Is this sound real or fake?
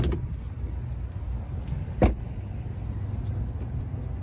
real